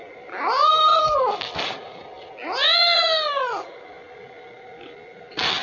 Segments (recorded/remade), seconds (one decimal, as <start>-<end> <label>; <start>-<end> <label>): 0.0-5.6 recorded